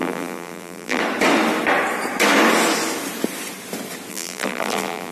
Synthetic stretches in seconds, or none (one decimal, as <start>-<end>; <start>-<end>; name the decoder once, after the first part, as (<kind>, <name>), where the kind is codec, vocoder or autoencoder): 0.0-1.0 (vocoder, BigVGAN v2); 4.1-5.1